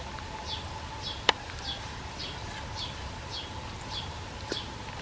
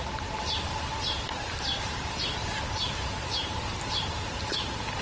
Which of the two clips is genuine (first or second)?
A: first